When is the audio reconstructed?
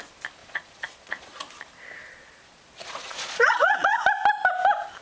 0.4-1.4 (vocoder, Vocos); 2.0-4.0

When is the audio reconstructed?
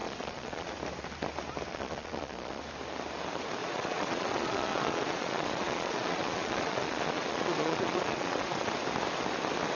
0.0-0.7 (vocoder, Vocos); 1.7-2.6; 3.6-8.7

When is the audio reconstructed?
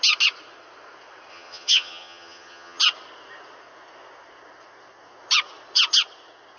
1.3-2.8 (vocoder, HiFi-GAN)